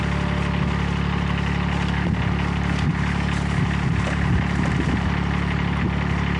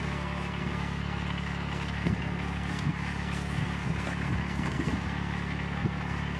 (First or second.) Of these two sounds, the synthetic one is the second